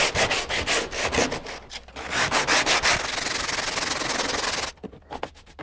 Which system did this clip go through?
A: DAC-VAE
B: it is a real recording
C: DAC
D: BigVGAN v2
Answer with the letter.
B